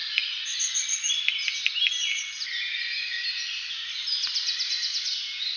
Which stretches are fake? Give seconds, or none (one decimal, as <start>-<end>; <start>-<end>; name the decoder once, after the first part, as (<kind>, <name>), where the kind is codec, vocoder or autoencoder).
none